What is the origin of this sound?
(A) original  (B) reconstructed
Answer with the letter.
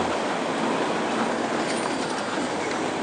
A